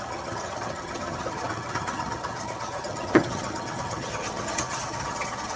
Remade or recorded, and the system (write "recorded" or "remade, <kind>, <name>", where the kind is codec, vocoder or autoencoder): remade, vocoder, HiFi-GAN